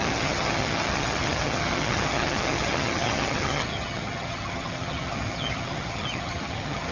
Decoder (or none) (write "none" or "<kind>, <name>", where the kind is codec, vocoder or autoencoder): vocoder, HiFi-GAN